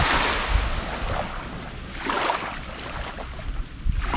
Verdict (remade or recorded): recorded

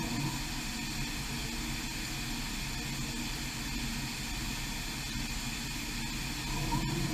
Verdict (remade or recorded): recorded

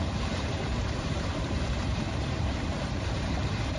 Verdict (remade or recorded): remade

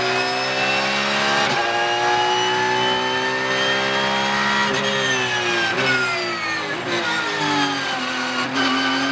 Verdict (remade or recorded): recorded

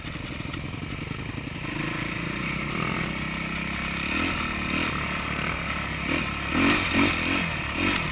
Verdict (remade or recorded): recorded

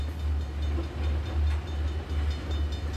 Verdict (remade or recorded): recorded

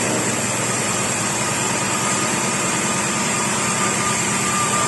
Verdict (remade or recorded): remade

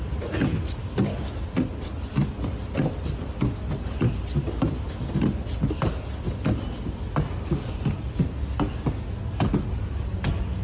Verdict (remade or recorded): recorded